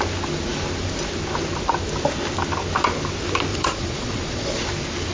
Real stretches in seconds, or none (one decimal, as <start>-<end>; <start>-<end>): 0.0-3.5; 4.6-5.1